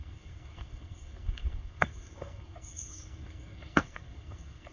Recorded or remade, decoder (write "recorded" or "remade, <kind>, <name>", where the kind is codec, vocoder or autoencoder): remade, codec, SNAC